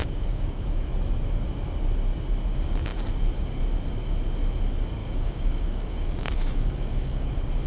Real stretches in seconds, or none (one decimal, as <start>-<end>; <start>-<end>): 0.9-5.0; 7.3-7.7